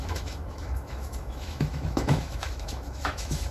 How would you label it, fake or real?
fake